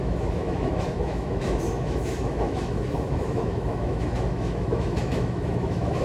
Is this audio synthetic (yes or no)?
yes